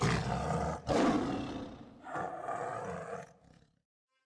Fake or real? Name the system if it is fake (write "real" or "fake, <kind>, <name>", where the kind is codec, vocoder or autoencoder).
real